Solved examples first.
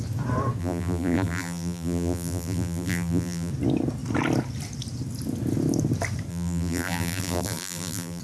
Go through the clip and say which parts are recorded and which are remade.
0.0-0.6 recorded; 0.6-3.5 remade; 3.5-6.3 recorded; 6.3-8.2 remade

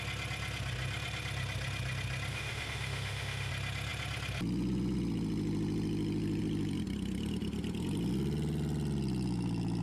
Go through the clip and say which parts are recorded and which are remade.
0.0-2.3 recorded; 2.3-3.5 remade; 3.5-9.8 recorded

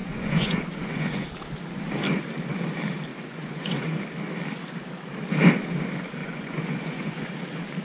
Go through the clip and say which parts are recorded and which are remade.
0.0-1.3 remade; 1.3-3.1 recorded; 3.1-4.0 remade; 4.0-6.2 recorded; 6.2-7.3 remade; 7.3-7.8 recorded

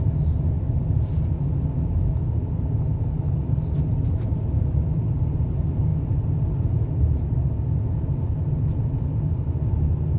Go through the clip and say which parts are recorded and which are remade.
0.0-10.2 recorded

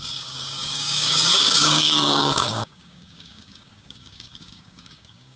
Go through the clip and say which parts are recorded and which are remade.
0.0-5.4 remade

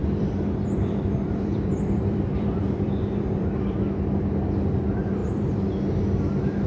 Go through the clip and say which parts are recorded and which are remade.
0.0-3.5 remade; 3.5-5.2 recorded; 5.2-5.8 remade; 5.8-6.7 recorded

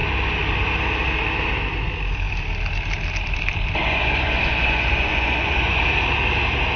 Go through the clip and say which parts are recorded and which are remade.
0.0-3.8 recorded; 3.8-5.8 remade; 5.8-6.8 recorded

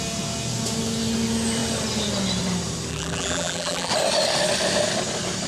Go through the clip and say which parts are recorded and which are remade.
0.0-2.9 recorded; 2.9-3.9 remade; 3.9-5.5 recorded